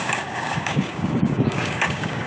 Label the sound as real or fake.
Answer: fake